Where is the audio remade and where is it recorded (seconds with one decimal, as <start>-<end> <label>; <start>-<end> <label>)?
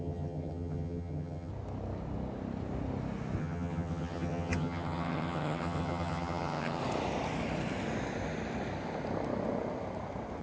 0.0-1.5 remade; 1.5-3.4 recorded; 3.4-6.8 remade; 6.8-10.4 recorded